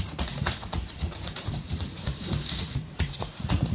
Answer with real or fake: fake